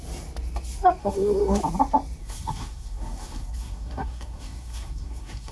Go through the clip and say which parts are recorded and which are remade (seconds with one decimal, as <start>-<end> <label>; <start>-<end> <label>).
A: 0.0-1.0 recorded; 1.0-1.6 remade; 1.6-2.2 recorded; 2.2-5.5 remade

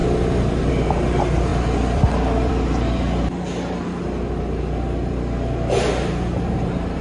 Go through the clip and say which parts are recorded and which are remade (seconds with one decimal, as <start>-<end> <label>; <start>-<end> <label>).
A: 0.0-7.0 recorded

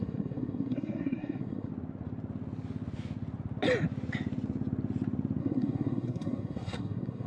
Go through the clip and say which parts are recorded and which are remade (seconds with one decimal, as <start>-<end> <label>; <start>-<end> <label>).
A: 0.0-1.7 remade; 1.7-5.4 recorded; 5.4-7.3 remade